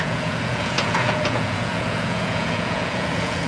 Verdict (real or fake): fake